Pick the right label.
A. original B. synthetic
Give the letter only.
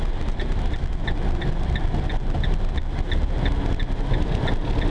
A